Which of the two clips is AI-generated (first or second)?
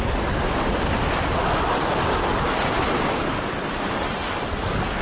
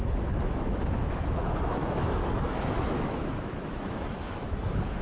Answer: second